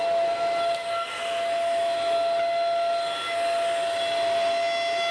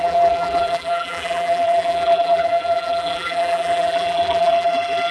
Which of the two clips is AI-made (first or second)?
second